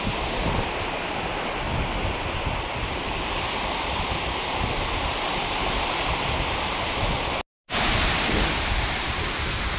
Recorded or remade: recorded